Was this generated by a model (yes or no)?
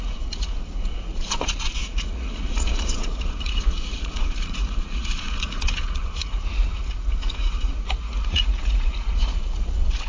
yes